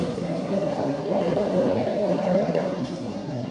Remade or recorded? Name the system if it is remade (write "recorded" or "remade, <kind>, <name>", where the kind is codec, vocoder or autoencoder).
remade, codec, SNAC